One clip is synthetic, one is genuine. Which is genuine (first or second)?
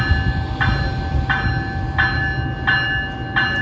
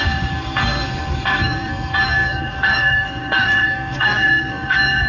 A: first